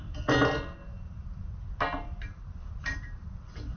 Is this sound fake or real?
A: real